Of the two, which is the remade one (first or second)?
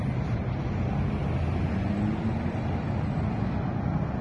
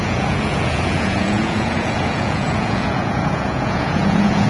second